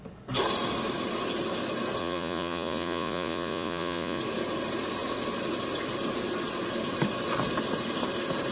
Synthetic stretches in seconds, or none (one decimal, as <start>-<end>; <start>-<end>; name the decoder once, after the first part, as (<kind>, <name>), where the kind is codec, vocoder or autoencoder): 2.0-4.2 (vocoder, Vocos)